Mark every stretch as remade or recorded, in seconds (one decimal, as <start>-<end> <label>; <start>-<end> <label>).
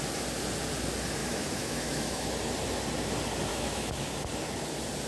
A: 0.0-1.2 recorded; 1.2-2.3 remade; 2.3-3.5 recorded; 3.5-4.1 remade; 4.1-5.1 recorded